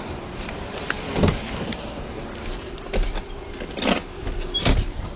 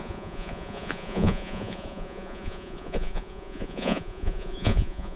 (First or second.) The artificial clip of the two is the second